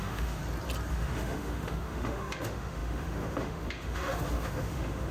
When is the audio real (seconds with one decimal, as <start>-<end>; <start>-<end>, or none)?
0.4-0.9